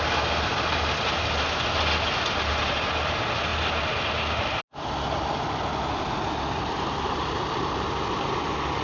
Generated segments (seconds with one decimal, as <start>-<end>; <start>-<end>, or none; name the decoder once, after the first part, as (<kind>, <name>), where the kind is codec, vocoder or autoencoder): none